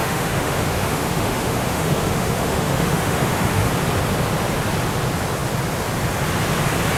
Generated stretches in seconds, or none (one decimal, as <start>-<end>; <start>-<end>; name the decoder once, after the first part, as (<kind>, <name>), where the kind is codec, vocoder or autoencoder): 0.0-3.7 (autoencoder, DAC-VAE)